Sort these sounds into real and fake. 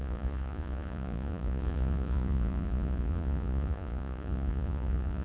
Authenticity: fake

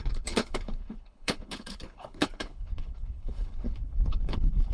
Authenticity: fake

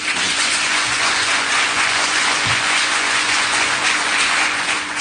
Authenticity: fake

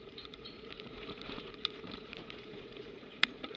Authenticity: fake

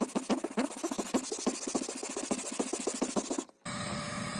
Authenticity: real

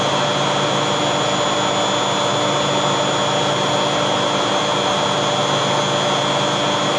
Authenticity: real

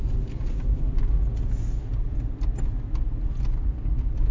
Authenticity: real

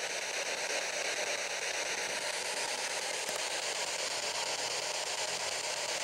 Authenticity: real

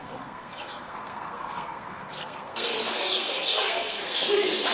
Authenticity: fake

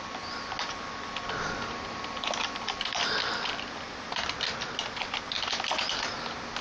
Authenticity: real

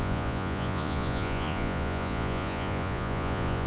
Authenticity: fake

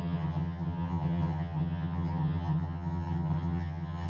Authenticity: fake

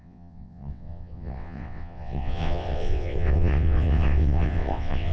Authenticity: fake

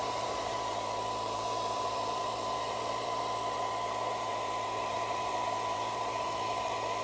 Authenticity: fake